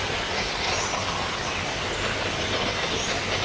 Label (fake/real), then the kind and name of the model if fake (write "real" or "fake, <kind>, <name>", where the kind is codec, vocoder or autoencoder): real